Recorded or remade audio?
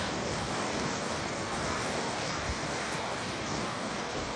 remade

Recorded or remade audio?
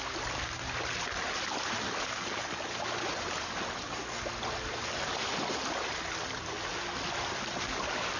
recorded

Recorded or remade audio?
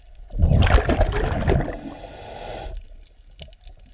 recorded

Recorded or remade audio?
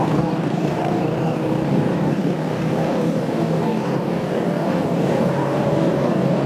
remade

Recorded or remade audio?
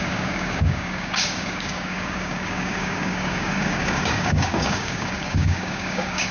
remade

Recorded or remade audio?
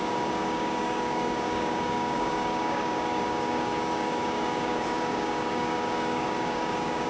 remade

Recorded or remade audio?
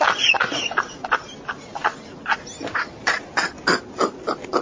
recorded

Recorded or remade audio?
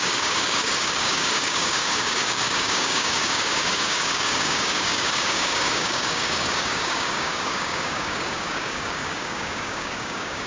remade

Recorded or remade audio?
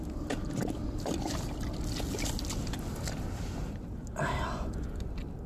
recorded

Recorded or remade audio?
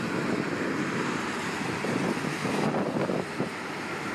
recorded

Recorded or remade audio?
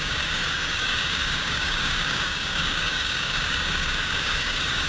remade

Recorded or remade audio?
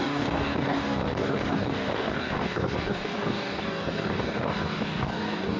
remade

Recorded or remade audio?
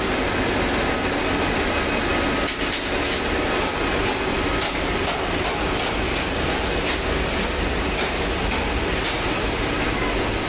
recorded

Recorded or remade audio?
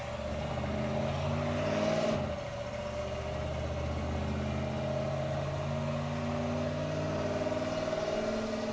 recorded